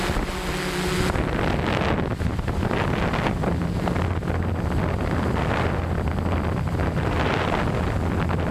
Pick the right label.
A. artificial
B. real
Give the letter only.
B